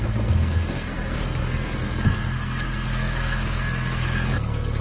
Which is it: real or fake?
fake